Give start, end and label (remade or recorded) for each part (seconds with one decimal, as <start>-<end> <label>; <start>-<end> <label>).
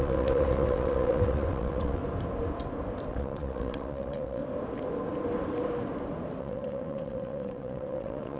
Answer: 0.0-2.0 remade; 2.0-3.1 recorded; 3.1-4.4 remade; 4.4-6.4 recorded; 6.4-8.4 remade